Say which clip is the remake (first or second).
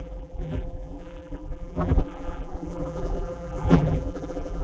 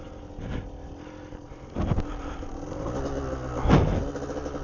first